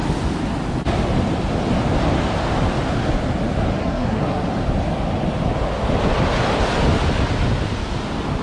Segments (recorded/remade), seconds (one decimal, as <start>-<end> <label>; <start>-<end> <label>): 0.0-3.8 recorded; 3.8-4.4 remade; 4.4-8.4 recorded